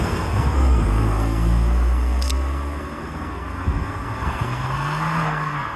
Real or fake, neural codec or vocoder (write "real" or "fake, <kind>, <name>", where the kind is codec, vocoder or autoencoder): fake, codec, SNAC